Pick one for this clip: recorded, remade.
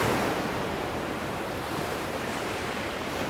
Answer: remade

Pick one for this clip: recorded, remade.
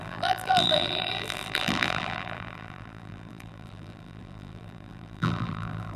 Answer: remade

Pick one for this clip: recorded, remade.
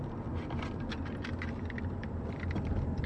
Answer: remade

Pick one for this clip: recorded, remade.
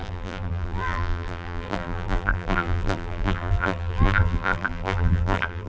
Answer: remade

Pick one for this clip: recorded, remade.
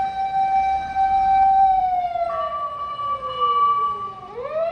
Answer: remade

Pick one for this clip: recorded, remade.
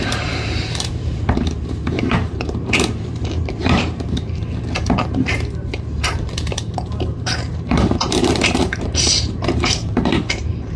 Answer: remade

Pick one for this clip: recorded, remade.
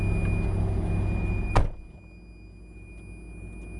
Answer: recorded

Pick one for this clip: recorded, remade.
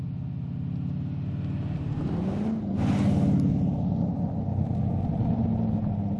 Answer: recorded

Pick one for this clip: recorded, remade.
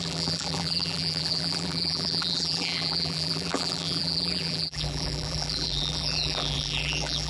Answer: remade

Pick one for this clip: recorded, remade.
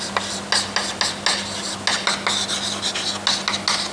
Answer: recorded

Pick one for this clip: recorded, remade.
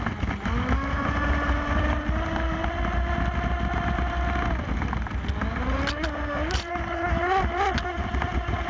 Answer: recorded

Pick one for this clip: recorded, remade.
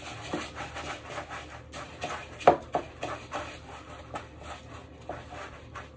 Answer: recorded